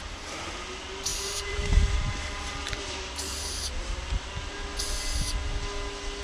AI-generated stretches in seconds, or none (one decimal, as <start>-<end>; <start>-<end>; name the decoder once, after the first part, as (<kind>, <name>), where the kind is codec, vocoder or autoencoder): 1.1-4.3 (vocoder, BigVGAN v2)